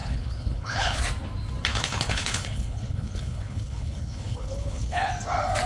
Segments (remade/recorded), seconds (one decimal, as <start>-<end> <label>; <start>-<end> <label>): 0.0-1.0 remade; 1.0-1.7 recorded; 1.7-5.1 remade; 5.1-5.7 recorded